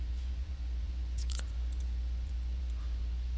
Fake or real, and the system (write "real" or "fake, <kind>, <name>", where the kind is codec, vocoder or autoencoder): fake, vocoder, Vocos